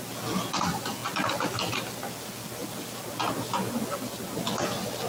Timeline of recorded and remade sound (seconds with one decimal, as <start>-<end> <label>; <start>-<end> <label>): 0.0-5.1 recorded